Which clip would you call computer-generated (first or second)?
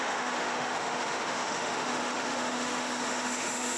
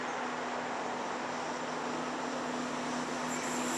first